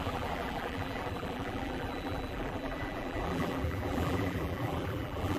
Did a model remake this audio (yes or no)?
yes